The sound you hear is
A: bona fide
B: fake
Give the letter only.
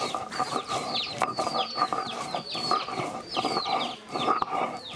A